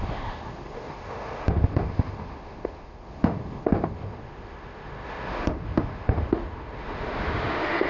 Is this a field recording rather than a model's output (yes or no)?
no